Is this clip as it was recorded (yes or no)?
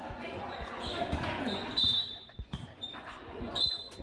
no